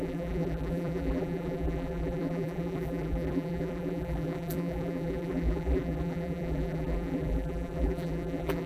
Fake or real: fake